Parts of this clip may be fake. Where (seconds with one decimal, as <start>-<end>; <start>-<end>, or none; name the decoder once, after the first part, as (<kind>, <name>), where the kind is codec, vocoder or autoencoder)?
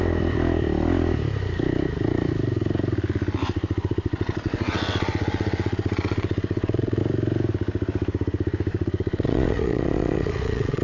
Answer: 3.4-7.0 (vocoder, WaveNeXt); 8.7-10.8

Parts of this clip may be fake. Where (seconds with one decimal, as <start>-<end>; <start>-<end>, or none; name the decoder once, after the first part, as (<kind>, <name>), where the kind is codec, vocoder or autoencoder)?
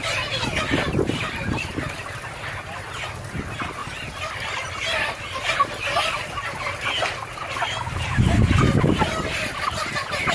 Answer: none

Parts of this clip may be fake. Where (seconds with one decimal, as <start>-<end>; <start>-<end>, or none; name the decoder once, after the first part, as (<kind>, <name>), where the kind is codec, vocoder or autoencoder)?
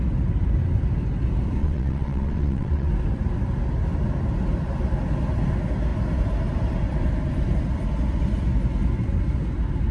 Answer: 1.6-2.9 (vocoder, WaveNeXt)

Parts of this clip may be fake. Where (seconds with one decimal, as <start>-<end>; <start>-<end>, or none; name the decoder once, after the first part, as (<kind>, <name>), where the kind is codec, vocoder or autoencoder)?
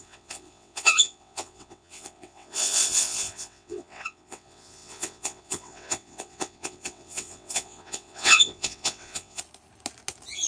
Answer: 0.0-9.4 (vocoder, WaveNeXt)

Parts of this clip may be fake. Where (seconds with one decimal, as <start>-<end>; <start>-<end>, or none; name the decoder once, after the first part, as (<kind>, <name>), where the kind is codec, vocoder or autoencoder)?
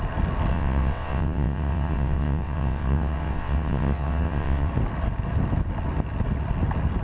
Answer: 0.5-4.7 (vocoder, WaveNeXt)